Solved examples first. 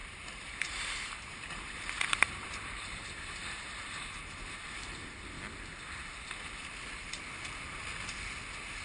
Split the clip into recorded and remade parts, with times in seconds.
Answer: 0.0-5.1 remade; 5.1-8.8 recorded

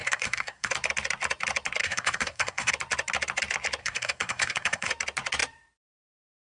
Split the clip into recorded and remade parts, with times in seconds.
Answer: 0.0-0.7 remade; 0.7-1.8 recorded; 1.8-2.7 remade; 2.7-3.8 recorded; 3.8-4.9 remade; 4.9-6.5 recorded

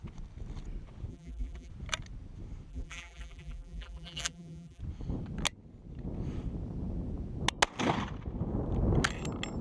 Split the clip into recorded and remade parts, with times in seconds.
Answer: 0.0-1.1 recorded; 1.1-1.7 remade; 1.7-2.7 recorded; 2.7-4.8 remade; 4.8-9.6 recorded

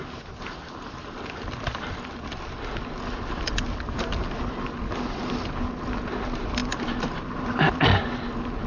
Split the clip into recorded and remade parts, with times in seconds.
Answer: 0.0-8.7 recorded

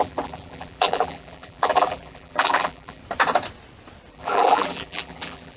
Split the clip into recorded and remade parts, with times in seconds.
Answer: 0.0-3.0 remade; 3.0-4.1 recorded; 4.1-5.6 remade

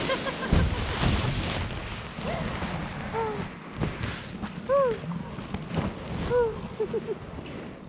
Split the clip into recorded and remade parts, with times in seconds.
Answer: 0.0-7.9 recorded

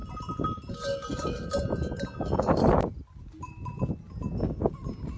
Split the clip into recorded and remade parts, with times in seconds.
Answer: 0.0-0.7 remade; 0.7-1.1 recorded; 1.1-3.8 remade; 3.8-5.2 recorded

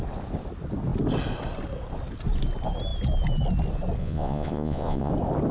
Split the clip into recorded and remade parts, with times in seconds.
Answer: 0.0-4.0 recorded; 4.0-5.1 remade; 5.1-5.5 recorded